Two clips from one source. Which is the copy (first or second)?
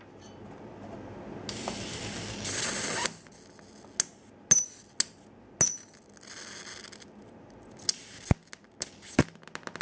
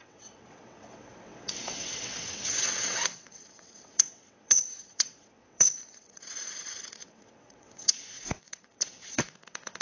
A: second